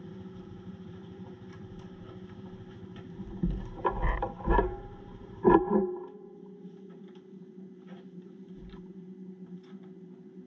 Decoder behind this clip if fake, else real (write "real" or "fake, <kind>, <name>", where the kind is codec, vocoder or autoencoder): fake, vocoder, BigVGAN v2